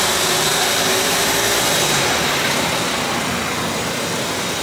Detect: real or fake real